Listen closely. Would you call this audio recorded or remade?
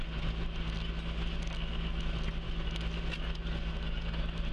recorded